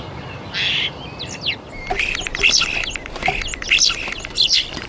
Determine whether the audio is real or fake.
real